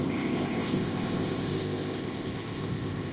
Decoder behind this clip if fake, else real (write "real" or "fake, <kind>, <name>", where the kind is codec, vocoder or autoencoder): fake, codec, ZipCodec